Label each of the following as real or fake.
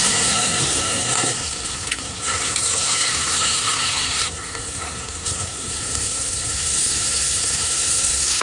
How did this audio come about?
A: fake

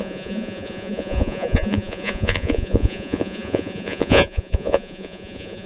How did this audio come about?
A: fake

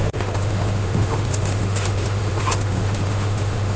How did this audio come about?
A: fake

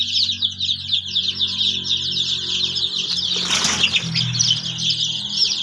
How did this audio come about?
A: real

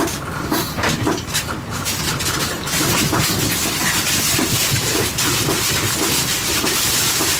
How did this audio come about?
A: real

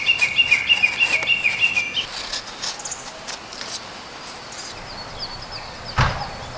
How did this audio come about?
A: real